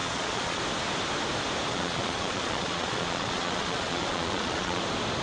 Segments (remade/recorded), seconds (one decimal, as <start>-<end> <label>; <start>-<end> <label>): 0.0-0.6 remade; 0.6-1.7 recorded; 1.7-4.8 remade; 4.8-5.2 recorded